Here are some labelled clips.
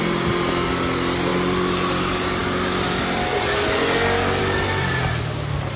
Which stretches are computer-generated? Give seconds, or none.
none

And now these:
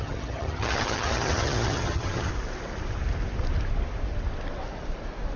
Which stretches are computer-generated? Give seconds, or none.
0.0-2.3 (vocoder, HiFi-GAN)

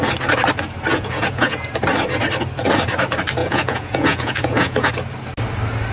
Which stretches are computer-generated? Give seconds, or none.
0.9-1.7 (vocoder, Vocos); 3.4-4.9